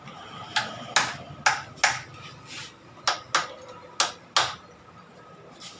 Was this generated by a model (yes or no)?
no